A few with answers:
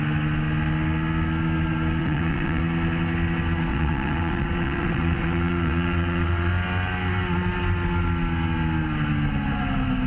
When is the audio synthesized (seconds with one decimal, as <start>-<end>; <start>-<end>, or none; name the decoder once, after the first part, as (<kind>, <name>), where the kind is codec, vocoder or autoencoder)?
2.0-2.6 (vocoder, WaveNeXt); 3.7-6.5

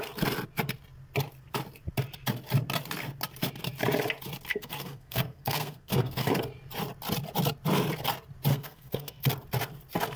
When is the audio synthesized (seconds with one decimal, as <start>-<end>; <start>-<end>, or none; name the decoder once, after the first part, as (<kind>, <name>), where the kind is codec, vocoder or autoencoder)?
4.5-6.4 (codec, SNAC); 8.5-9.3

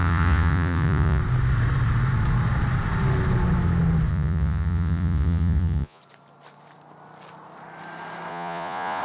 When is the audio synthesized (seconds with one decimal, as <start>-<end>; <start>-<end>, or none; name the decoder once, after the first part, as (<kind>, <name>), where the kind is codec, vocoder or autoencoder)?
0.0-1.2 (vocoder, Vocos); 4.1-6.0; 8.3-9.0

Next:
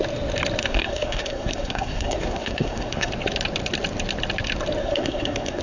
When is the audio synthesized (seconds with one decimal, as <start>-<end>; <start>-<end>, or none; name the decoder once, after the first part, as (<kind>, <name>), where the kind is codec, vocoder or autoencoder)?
0.6-3.1 (codec, SNAC); 4.8-5.6

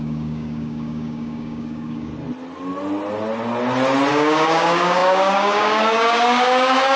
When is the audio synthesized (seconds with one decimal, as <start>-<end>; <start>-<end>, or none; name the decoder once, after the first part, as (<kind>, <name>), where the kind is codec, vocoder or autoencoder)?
0.0-2.1 (codec, DAC); 4.1-7.0

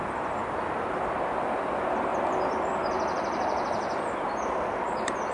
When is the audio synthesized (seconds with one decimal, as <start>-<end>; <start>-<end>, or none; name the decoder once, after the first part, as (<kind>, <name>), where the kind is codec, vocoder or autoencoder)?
2.1-5.3 (vocoder, BigVGAN v2)